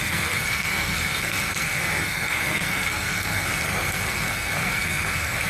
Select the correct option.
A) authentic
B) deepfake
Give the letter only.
B